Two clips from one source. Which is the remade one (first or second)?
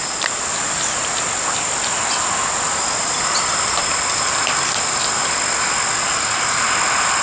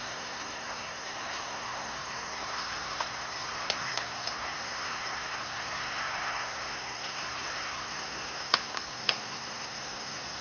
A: second